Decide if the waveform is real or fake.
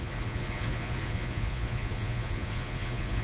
fake